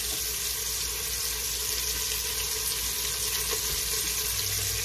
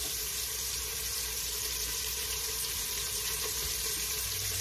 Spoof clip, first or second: second